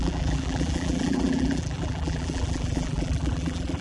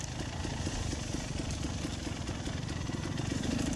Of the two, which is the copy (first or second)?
first